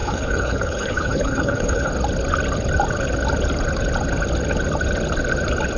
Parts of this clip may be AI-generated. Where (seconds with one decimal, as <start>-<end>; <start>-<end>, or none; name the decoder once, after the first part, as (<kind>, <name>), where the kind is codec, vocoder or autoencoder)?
0.0-1.9 (codec, HILCodec)